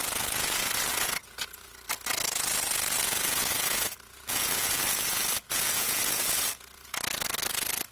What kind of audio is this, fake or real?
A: fake